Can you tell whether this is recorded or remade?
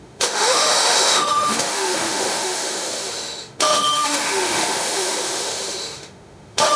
remade